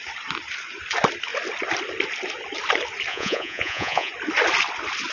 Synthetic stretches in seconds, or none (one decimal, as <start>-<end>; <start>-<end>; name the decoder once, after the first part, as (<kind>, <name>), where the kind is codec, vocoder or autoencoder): 3.1-4.1 (vocoder, Vocos)